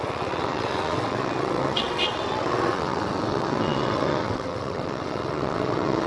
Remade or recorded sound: remade